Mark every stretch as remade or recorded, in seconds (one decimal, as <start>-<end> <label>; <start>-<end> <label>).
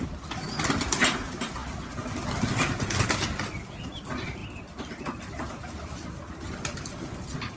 0.0-7.6 recorded